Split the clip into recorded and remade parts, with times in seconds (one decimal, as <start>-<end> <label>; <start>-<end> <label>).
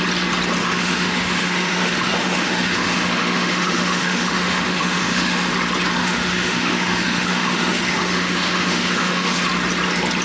0.0-0.6 recorded; 0.6-5.5 remade; 5.5-6.0 recorded; 6.0-9.4 remade; 9.4-10.2 recorded